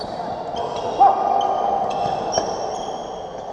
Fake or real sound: real